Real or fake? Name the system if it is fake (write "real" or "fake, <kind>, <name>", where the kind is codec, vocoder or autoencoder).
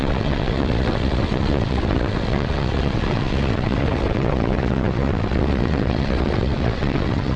fake, vocoder, WaveNeXt